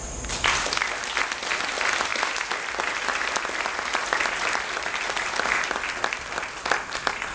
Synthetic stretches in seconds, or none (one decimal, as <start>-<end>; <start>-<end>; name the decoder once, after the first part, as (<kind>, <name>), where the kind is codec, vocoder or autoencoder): none